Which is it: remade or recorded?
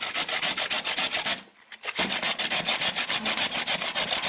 recorded